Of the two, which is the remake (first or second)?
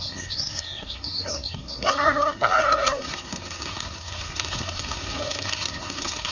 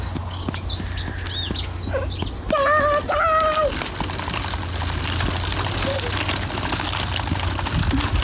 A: first